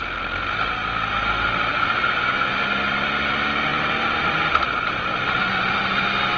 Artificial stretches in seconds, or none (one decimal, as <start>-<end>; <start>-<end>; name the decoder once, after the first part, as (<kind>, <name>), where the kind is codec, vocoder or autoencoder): none